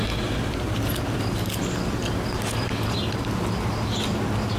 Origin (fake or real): real